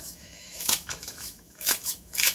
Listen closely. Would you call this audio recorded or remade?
remade